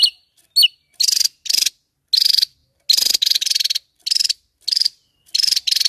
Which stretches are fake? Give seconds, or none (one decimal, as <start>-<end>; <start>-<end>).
none

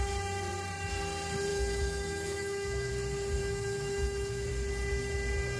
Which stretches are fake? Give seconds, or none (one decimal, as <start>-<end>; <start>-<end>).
1.5-2.9; 3.4-4.5

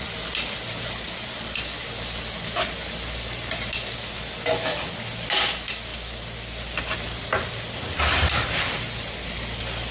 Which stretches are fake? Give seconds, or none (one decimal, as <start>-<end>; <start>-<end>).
none

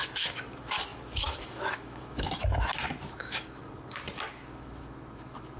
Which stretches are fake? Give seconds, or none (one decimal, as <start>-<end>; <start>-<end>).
0.0-3.6; 4.3-5.6